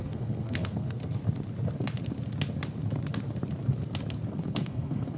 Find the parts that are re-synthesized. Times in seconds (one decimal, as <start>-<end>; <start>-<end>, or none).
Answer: 0.0-1.2; 4.3-5.2

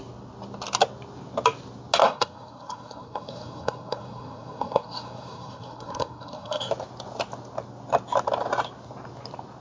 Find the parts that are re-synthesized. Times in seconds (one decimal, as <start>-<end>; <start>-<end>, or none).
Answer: 2.0-6.7

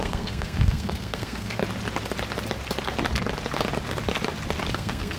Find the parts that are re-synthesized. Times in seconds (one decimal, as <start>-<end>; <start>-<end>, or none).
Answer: 0.0-1.6; 4.7-5.2

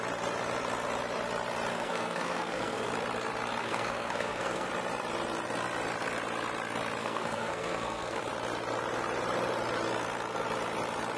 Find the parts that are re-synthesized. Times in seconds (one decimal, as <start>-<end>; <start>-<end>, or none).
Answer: 1.7-2.9; 3.6-4.7; 7.0-8.2

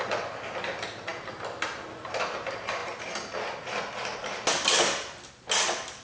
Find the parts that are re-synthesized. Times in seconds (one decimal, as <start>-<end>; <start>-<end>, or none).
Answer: none

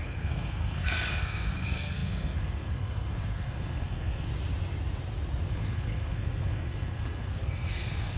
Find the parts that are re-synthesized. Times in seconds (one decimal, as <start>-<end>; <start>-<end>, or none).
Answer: 0.0-4.3; 5.5-8.2

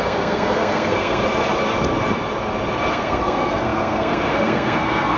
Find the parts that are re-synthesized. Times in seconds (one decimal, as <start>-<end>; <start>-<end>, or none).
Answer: 0.0-1.2; 2.9-5.2

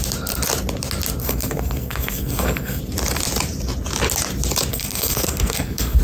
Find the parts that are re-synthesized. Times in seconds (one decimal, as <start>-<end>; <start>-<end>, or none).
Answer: 1.2-2.8; 4.7-6.0